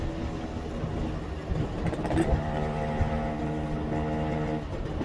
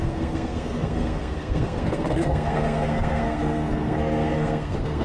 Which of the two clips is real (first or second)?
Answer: first